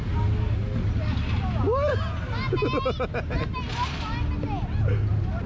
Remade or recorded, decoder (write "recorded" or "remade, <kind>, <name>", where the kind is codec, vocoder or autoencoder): recorded